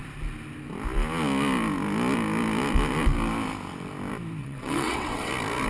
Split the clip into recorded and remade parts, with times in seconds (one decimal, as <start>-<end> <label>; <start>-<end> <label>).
0.0-4.4 recorded; 4.4-5.3 remade; 5.3-5.7 recorded